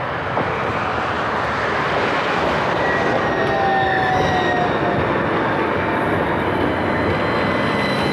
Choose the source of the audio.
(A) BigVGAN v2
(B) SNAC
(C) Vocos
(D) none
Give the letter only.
D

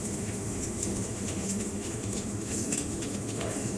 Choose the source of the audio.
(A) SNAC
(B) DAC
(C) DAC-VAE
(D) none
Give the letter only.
C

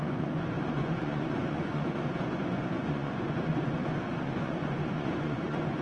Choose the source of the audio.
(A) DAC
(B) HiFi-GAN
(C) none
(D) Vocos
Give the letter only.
D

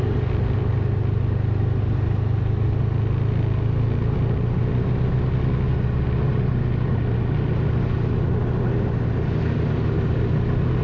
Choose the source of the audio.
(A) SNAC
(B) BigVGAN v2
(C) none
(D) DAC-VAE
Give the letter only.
C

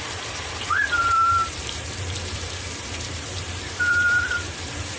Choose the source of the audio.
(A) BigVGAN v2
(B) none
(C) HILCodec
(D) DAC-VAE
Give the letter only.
A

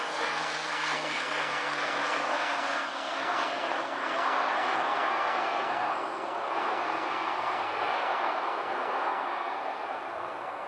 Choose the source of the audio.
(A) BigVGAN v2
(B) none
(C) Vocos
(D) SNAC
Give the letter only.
D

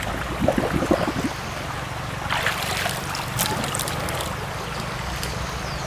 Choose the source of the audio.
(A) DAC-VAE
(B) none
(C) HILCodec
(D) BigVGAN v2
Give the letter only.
B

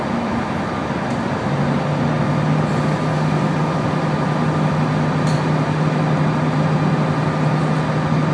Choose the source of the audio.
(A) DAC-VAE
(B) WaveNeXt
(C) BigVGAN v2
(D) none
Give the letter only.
D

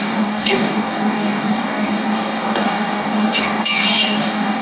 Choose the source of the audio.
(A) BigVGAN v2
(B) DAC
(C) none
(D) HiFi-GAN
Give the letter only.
B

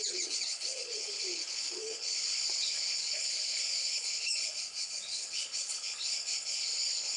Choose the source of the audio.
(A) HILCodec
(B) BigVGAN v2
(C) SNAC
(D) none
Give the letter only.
A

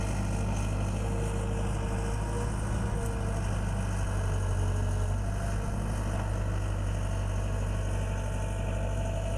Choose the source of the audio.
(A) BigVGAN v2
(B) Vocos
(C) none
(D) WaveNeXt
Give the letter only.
C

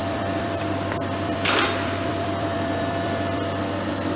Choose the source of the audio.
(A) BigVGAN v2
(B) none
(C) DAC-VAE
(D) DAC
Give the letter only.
A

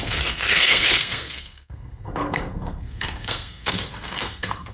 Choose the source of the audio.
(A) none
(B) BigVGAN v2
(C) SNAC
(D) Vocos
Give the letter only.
C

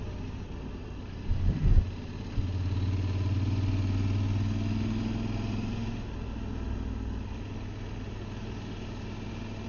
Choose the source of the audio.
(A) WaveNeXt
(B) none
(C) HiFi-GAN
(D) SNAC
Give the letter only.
B